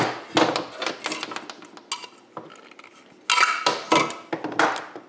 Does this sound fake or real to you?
real